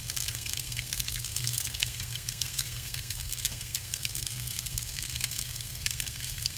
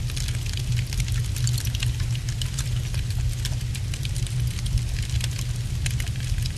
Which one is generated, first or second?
first